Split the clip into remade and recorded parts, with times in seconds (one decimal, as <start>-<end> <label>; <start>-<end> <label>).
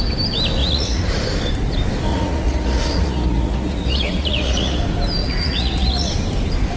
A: 0.0-0.6 recorded; 0.6-1.1 remade; 1.1-2.1 recorded; 2.1-4.8 remade; 4.8-5.2 recorded; 5.2-6.1 remade; 6.1-6.8 recorded